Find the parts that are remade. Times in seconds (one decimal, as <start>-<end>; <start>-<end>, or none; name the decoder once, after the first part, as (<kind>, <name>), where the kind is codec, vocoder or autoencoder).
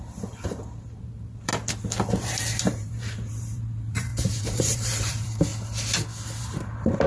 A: 0.0-1.5 (vocoder, BigVGAN v2); 2.1-5.5; 6.4-7.1